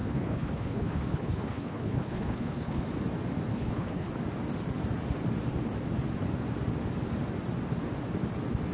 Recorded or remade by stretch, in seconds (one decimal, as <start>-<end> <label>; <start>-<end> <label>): 0.0-2.8 remade; 2.8-3.5 recorded; 3.5-4.1 remade; 4.1-8.7 recorded